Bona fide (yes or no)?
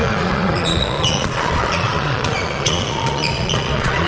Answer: no